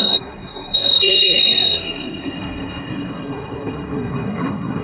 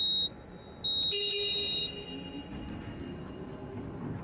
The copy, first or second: first